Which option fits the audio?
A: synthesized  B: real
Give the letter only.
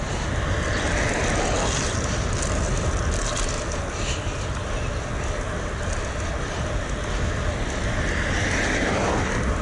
B